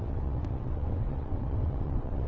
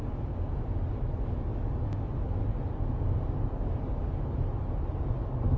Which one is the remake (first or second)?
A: first